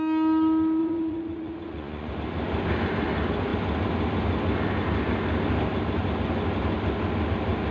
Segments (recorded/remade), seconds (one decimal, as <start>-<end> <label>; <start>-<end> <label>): 0.0-0.8 recorded; 0.8-2.1 remade; 2.1-7.7 recorded